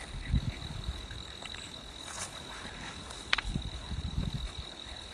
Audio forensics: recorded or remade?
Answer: remade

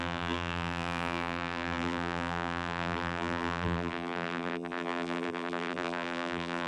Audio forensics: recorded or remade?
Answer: remade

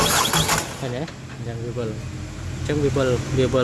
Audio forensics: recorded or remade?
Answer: recorded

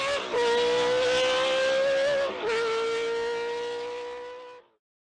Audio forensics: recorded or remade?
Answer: recorded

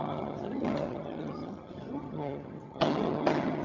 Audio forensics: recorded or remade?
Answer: remade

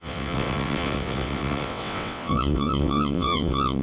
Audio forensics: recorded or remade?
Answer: remade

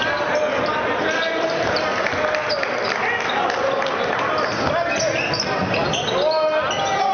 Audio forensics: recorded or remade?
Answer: recorded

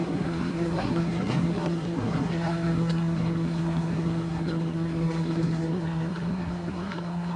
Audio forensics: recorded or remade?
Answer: remade